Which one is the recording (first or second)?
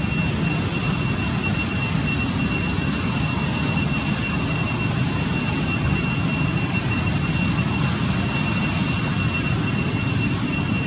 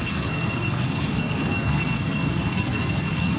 first